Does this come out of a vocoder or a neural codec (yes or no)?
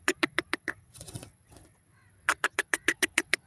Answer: yes